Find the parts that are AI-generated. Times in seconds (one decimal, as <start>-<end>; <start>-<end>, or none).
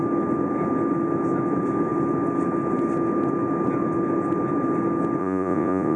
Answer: 5.2-6.0